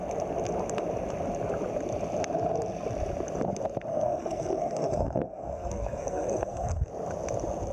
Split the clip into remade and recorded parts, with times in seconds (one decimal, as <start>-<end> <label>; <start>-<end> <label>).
0.0-3.9 recorded; 3.9-6.9 remade; 6.9-7.7 recorded